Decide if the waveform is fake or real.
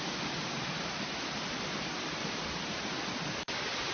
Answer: real